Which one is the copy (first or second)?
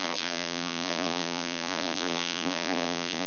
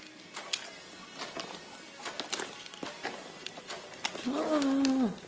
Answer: first